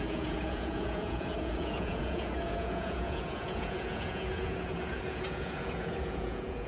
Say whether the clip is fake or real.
fake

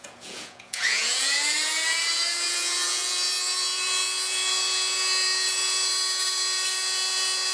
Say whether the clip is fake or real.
fake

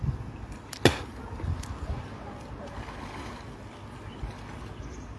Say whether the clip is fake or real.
real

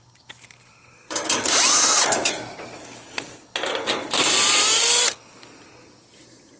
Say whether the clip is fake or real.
real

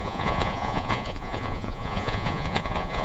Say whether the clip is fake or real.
fake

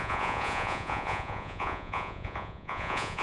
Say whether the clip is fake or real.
fake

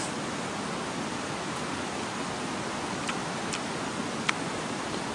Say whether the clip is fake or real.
real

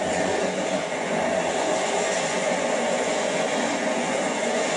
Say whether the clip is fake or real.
fake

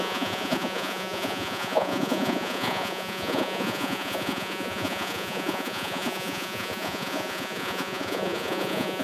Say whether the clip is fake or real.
fake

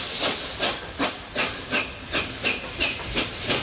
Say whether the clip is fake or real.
real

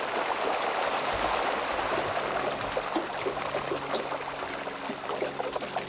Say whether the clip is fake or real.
real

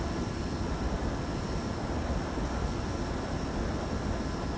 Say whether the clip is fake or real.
real